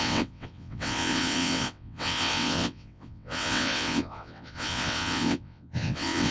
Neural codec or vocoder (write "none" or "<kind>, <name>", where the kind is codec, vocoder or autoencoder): vocoder, WaveNeXt